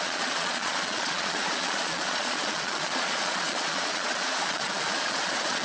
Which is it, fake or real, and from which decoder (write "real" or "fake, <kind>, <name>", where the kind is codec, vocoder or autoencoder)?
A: fake, vocoder, Vocos